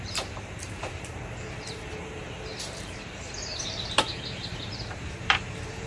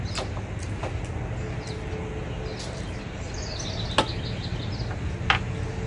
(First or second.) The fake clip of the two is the first